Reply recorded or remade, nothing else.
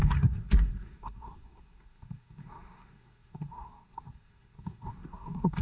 remade